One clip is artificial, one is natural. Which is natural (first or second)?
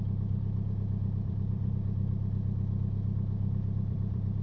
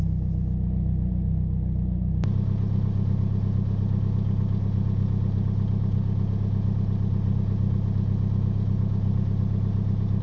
second